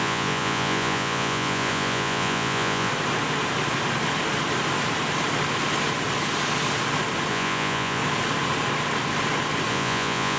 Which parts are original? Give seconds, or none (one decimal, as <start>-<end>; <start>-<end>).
2.9-7.3; 8.0-9.7